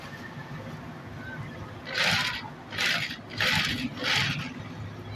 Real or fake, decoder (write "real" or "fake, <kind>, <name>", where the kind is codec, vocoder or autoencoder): real